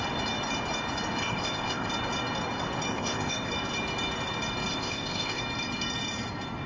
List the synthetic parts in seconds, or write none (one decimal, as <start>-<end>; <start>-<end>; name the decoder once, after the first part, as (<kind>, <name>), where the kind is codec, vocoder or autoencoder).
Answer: 1.2-1.9 (codec, ZipCodec); 2.9-3.5; 4.7-5.4